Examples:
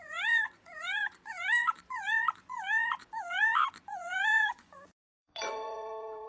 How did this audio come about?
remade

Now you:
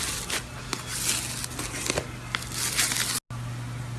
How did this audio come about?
recorded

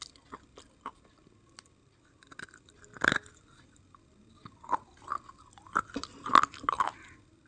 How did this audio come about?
recorded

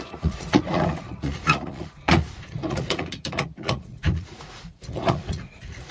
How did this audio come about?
remade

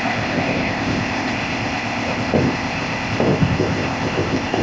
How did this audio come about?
remade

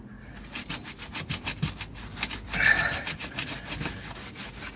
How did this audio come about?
recorded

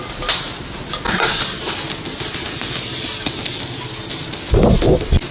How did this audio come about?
recorded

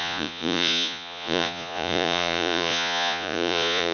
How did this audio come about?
remade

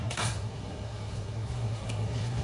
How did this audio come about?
remade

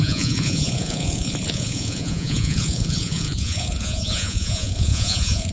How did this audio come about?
remade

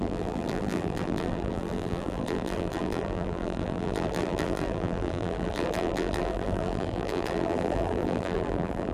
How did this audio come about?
remade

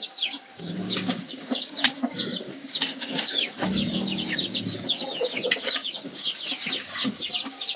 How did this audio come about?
remade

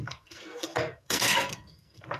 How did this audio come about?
remade